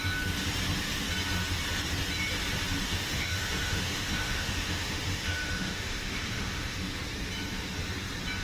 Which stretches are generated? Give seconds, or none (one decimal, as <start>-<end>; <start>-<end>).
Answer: 2.8-7.0